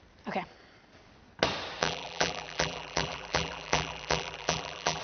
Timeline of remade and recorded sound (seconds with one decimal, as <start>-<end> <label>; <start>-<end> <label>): 0.0-1.8 recorded; 1.8-5.0 remade